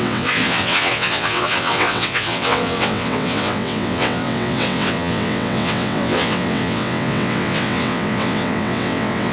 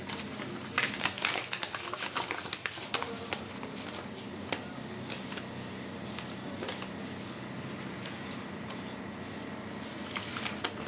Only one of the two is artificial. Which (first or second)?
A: first